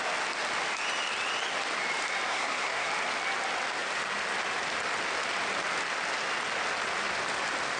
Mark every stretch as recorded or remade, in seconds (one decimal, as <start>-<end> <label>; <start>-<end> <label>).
0.0-2.3 recorded; 2.3-2.9 remade; 2.9-7.8 recorded